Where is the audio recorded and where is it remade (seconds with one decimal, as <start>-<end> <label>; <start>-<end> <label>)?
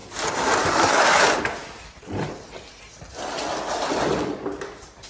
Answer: 0.0-1.6 recorded; 1.6-5.1 remade